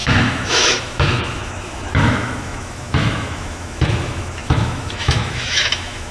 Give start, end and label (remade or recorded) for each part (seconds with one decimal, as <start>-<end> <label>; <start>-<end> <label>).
0.0-6.1 remade